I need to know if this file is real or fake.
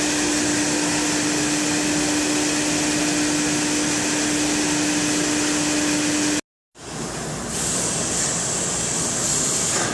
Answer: real